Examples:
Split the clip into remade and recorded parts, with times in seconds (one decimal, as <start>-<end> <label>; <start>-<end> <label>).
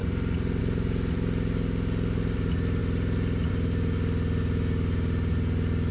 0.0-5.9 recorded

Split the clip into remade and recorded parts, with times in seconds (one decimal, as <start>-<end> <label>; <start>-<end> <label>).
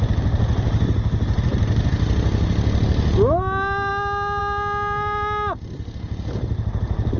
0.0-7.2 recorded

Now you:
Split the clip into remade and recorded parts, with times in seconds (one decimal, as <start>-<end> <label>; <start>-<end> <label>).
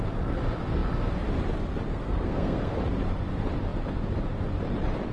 0.0-1.9 recorded; 1.9-2.8 remade; 2.8-5.1 recorded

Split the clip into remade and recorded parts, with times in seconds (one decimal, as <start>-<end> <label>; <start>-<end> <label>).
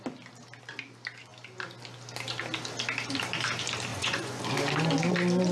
0.0-3.9 recorded; 3.9-4.4 remade; 4.4-5.5 recorded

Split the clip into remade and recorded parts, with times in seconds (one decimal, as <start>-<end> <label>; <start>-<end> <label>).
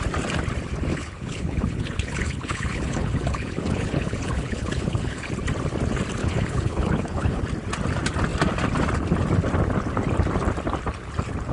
0.0-0.9 recorded; 0.9-5.3 remade; 5.3-6.2 recorded; 6.2-7.4 remade; 7.4-11.5 recorded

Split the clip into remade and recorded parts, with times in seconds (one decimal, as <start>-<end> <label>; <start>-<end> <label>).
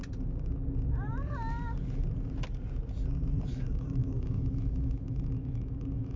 0.0-3.5 recorded; 3.5-6.2 remade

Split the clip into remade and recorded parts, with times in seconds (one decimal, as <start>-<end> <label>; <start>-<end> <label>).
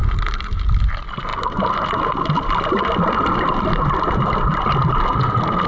0.0-5.7 recorded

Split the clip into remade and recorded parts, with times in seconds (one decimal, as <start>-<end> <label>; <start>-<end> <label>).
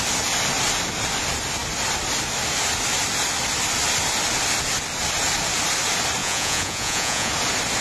0.0-6.2 recorded; 6.2-7.3 remade; 7.3-7.8 recorded